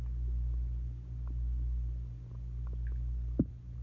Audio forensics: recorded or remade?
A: recorded